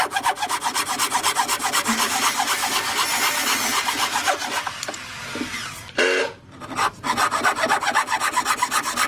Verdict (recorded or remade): recorded